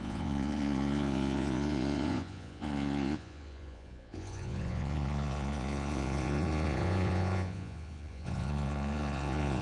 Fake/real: fake